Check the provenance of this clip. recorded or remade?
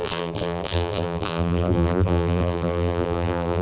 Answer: remade